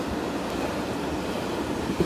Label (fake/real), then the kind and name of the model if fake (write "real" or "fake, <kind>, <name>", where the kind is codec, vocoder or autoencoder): real